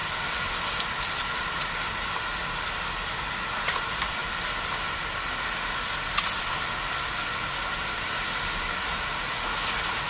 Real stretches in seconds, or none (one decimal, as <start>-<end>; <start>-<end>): 0.0-3.2; 4.2-8.8